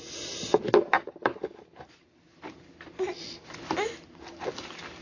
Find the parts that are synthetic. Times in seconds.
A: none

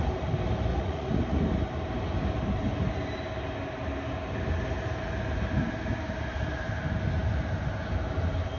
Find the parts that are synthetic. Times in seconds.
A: 0.7-1.4 (vocoder, Vocos)